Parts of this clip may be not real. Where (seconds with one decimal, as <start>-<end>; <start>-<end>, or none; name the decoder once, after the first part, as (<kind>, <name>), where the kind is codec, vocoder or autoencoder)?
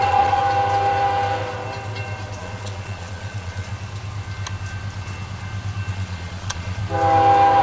0.0-0.4 (vocoder, Vocos); 2.4-3.7; 5.9-6.8